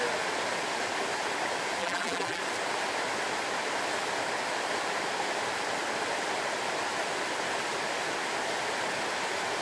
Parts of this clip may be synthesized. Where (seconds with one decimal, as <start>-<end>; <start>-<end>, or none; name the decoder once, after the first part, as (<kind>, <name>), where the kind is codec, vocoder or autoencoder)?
1.8-2.4 (vocoder, BigVGAN v2)